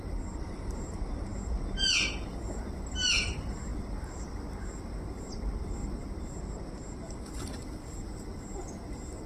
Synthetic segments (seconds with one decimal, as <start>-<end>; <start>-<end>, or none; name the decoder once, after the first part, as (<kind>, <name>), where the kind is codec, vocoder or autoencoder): none